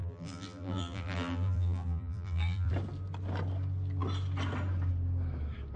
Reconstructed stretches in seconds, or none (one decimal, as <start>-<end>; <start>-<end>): 0.0-2.7